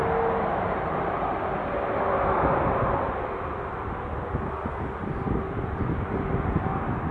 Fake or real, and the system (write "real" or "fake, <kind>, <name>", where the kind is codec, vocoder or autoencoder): real